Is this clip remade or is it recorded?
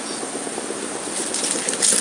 recorded